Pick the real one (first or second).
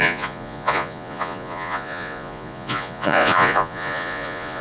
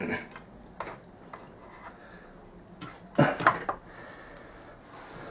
second